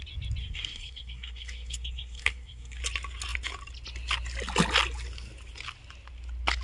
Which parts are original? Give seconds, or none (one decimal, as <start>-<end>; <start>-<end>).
0.0-0.4; 2.8-6.6